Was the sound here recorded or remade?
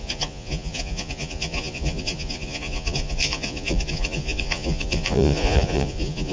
remade